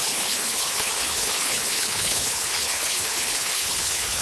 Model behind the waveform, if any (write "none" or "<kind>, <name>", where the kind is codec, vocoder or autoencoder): codec, HILCodec